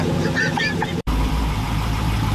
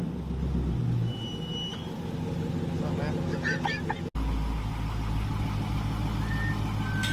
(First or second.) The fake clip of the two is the first